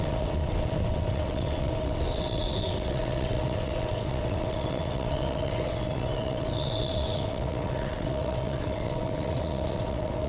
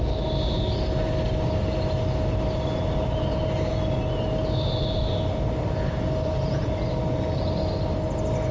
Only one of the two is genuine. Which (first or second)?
second